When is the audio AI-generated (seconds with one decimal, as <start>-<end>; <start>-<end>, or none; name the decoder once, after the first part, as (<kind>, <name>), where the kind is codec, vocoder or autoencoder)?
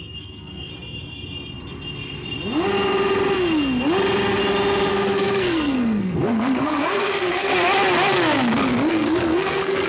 0.0-0.7 (codec, SNAC); 4.9-7.5; 8.9-9.9